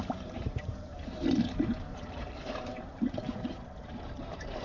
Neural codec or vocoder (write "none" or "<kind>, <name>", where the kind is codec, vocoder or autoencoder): vocoder, BigVGAN v2